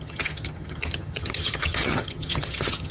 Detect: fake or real fake